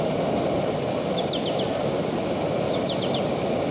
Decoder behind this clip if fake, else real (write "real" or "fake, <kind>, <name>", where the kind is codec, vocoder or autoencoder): real